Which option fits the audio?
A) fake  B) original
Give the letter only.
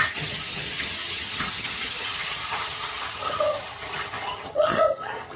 A